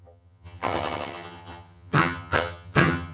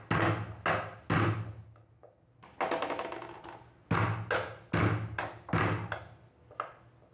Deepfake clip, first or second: first